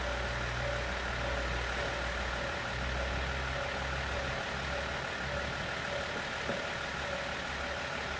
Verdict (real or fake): real